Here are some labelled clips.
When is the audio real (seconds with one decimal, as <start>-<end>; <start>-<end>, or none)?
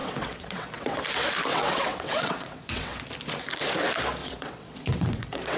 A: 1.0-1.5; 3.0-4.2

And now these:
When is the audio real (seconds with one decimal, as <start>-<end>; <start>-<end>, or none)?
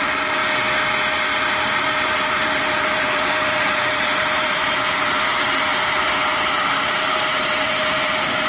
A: 0.4-1.5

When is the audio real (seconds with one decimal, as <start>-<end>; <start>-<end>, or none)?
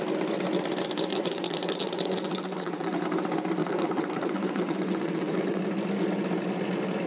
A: 0.0-1.1; 3.0-3.6; 5.6-7.1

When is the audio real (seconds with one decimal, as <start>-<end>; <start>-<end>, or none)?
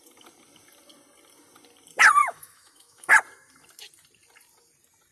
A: 0.0-2.2; 3.1-5.1